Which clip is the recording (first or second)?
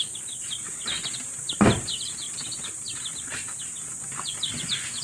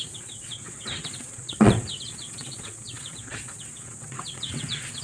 first